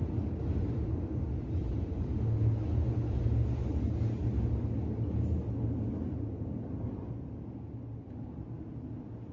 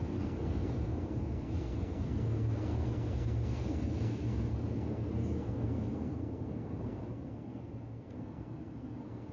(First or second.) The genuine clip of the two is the first